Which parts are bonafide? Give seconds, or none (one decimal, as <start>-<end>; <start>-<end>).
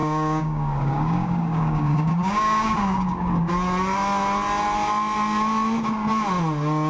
3.5-6.9